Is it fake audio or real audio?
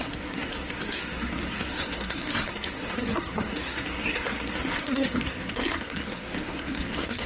fake